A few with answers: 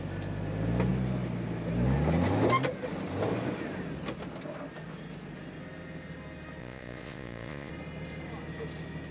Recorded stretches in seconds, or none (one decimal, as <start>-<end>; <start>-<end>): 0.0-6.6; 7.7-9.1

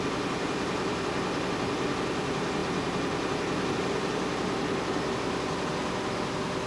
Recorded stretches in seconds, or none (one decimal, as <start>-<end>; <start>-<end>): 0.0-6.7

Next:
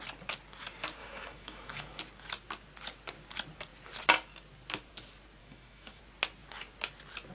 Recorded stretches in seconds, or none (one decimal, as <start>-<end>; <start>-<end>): 0.0-1.0; 2.0-5.4; 6.0-7.3

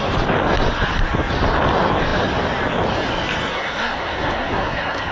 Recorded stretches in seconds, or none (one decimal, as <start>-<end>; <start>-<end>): 0.0-3.5

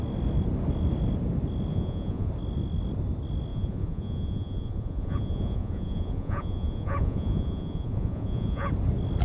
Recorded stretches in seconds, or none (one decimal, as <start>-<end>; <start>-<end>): 0.0-1.7; 2.3-3.5; 8.7-9.2

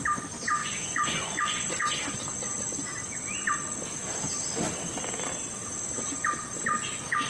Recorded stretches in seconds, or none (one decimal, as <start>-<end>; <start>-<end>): 0.0-0.6; 1.9-7.3

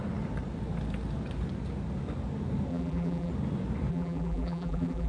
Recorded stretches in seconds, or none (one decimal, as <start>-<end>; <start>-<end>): 0.0-2.7; 3.3-3.9

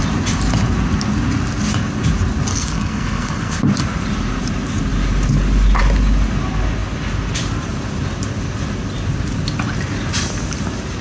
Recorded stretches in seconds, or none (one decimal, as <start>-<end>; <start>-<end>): 0.0-2.5; 3.6-11.0